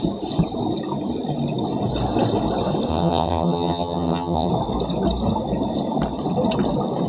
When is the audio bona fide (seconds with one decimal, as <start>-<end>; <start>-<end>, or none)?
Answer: 0.0-2.9; 4.5-7.1